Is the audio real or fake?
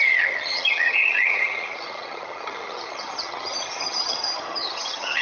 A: fake